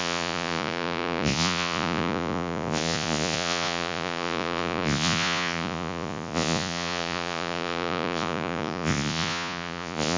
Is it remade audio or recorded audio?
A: remade